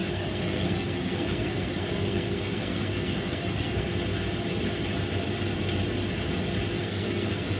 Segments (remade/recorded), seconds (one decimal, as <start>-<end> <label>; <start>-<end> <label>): 0.0-3.9 remade; 3.9-6.7 recorded; 6.7-7.6 remade